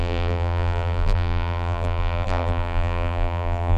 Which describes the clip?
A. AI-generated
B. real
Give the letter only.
A